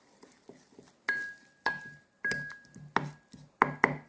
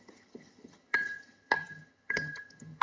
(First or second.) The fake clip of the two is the second